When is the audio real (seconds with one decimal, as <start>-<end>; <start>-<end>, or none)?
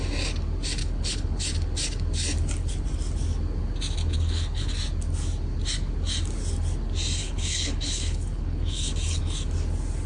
0.0-0.8; 1.4-4.0; 4.7-7.2; 9.2-10.1